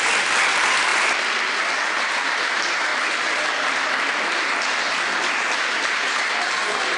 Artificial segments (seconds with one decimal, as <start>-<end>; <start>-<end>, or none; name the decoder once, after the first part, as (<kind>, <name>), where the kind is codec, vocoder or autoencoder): none